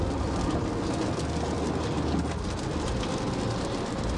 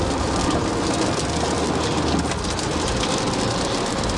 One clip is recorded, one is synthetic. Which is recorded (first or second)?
first